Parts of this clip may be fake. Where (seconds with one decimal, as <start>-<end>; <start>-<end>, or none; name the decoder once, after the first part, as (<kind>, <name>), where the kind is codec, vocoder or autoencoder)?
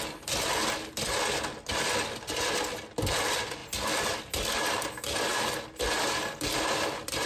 none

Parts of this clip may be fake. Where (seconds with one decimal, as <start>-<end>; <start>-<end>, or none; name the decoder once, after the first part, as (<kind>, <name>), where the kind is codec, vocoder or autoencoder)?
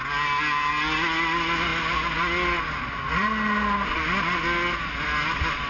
none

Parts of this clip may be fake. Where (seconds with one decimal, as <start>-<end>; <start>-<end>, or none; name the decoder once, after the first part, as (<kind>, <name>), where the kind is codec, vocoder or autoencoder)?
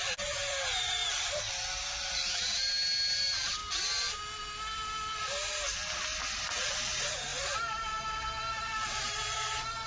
0.0-1.0 (vocoder, BigVGAN v2); 1.5-3.6; 6.5-9.9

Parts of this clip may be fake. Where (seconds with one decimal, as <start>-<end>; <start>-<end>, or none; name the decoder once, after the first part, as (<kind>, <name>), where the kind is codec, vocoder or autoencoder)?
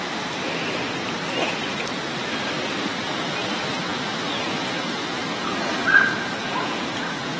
3.9-7.4 (vocoder, Vocos)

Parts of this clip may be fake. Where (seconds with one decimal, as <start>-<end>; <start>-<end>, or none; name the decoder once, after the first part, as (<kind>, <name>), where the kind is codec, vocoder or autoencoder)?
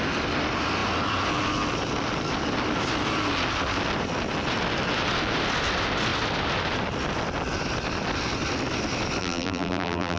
9.2-10.2 (vocoder, BigVGAN v2)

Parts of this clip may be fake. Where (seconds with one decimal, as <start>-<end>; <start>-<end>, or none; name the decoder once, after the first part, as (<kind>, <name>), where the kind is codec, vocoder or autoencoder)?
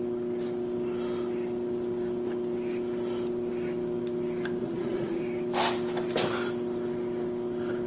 4.6-5.2 (vocoder, Vocos)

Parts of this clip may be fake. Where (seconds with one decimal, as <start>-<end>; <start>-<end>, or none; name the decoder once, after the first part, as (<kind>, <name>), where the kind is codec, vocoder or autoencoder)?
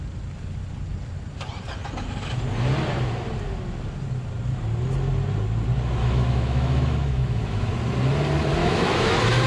6.0-7.7 (autoencoder, DAC-VAE); 8.6-9.1